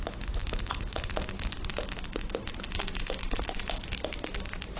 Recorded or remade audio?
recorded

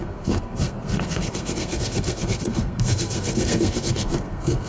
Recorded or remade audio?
remade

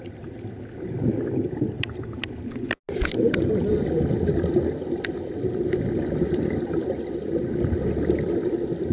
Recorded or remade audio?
recorded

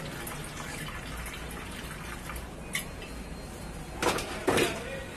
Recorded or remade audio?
recorded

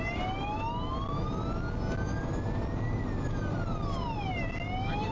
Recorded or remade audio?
recorded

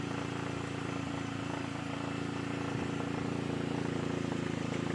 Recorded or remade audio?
remade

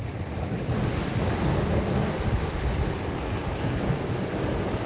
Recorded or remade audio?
recorded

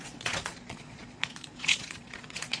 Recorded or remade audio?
remade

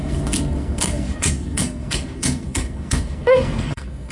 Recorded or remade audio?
remade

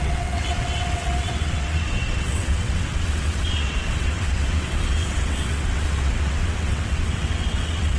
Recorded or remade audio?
remade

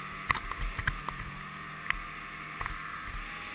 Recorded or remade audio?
recorded